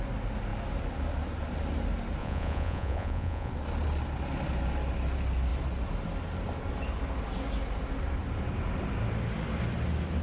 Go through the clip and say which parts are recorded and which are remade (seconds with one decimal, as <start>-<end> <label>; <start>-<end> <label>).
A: 0.0-2.2 recorded; 2.2-3.5 remade; 3.5-10.2 recorded